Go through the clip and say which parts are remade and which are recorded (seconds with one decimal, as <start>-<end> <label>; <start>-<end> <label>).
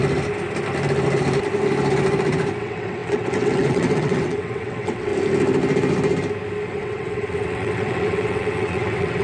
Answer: 0.0-2.6 recorded; 2.6-5.1 remade; 5.1-6.7 recorded; 6.7-9.2 remade